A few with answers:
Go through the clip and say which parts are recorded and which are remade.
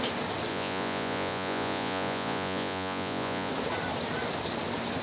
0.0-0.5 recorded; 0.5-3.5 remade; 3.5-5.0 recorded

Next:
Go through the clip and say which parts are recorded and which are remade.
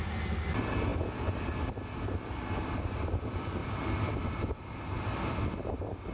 0.0-6.1 recorded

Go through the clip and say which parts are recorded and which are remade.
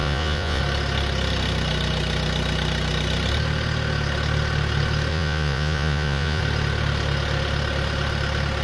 0.0-0.6 remade; 0.6-5.1 recorded; 5.1-6.4 remade; 6.4-8.6 recorded